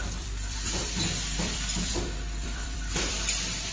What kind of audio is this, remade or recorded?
remade